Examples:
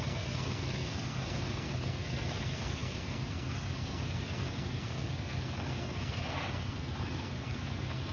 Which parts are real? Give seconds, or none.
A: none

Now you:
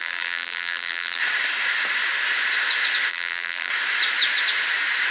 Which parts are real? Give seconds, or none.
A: 1.2-3.1; 3.7-5.1

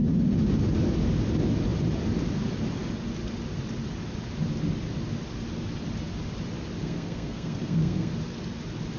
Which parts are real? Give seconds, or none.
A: 0.0-6.8; 8.1-9.0

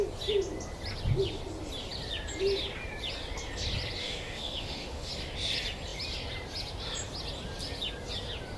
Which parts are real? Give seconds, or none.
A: 0.0-4.0; 5.1-8.6

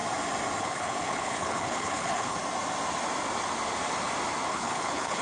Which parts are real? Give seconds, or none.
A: 0.0-0.6; 2.4-4.5

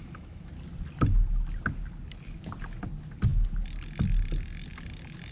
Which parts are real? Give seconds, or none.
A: 0.5-5.3

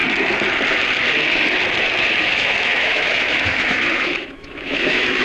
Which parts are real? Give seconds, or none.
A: 0.0-2.2

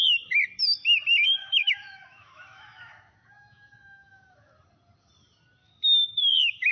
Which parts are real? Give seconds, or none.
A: 0.0-1.4; 4.5-5.6